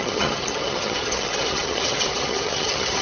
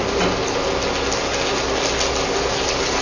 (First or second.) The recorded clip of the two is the second